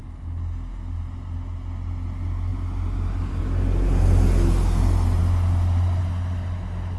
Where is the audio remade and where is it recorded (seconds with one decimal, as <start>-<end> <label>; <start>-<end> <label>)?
0.0-7.0 recorded

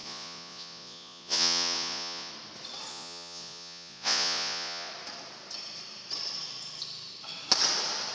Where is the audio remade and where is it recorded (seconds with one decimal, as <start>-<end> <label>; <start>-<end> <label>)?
0.0-2.3 remade; 2.3-2.9 recorded; 2.9-4.9 remade; 4.9-8.1 recorded

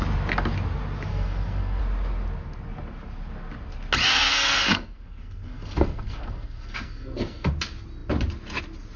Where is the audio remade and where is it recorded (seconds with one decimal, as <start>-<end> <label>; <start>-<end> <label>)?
0.0-1.1 recorded; 1.1-1.8 remade; 1.8-4.1 recorded; 4.1-7.5 remade; 7.5-9.0 recorded

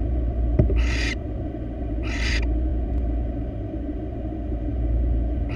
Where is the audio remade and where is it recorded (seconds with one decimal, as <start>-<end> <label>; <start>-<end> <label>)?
0.0-5.6 remade

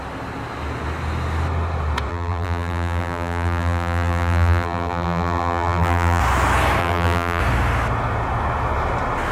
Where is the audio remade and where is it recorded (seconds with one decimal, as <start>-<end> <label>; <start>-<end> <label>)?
0.0-2.1 recorded; 2.1-6.2 remade; 6.2-6.8 recorded; 6.8-7.4 remade; 7.4-9.3 recorded

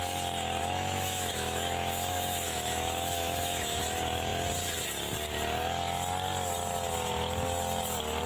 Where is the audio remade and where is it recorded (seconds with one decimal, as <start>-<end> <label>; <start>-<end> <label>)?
0.0-0.6 recorded; 0.6-3.8 remade; 3.8-8.3 recorded

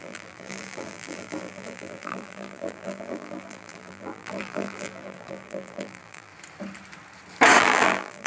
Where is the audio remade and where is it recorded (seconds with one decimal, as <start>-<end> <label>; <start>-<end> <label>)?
0.0-6.3 remade; 6.3-7.6 recorded; 7.6-8.3 remade

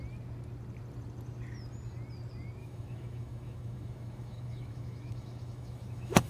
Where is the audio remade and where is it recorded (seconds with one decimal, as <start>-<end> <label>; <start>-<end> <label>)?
0.0-2.6 recorded; 2.6-6.3 remade